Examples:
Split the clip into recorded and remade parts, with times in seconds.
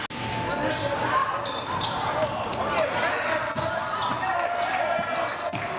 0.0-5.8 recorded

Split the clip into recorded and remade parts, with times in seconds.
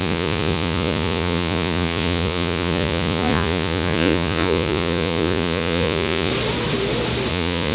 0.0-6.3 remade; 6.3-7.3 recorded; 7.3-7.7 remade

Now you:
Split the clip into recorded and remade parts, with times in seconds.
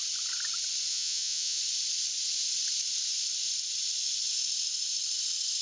0.0-0.9 recorded; 0.9-1.6 remade; 1.6-5.6 recorded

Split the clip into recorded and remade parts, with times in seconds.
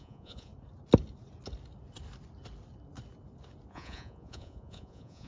0.0-0.5 remade; 0.5-3.7 recorded; 3.7-5.3 remade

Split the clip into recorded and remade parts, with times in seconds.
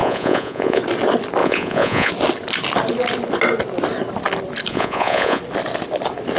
0.0-0.8 remade; 0.8-1.4 recorded; 1.4-2.1 remade; 2.1-4.7 recorded; 4.7-5.4 remade; 5.4-6.4 recorded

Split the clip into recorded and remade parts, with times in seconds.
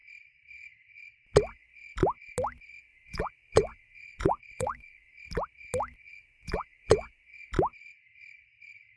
0.0-2.9 recorded; 2.9-5.1 remade; 5.1-6.1 recorded; 6.1-7.2 remade; 7.2-9.0 recorded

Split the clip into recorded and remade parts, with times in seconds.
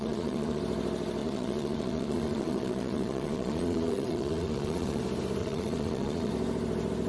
0.0-0.6 remade; 0.6-1.2 recorded; 1.2-5.0 remade; 5.0-5.4 recorded; 5.4-6.3 remade; 6.3-7.1 recorded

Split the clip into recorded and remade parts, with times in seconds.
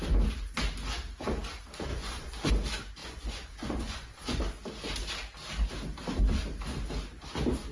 0.0-1.9 recorded; 1.9-2.5 remade; 2.5-3.0 recorded; 3.0-4.4 remade; 4.4-7.7 recorded